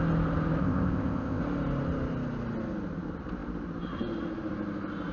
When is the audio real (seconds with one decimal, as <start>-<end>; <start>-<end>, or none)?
0.0-0.6; 1.4-5.1